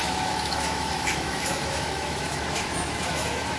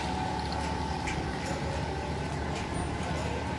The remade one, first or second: first